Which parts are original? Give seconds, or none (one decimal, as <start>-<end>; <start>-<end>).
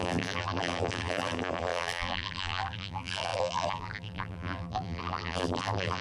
none